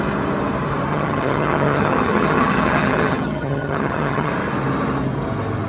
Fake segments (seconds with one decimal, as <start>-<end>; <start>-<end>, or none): 0.9-4.3